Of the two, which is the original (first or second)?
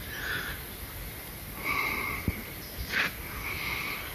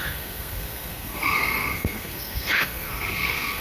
first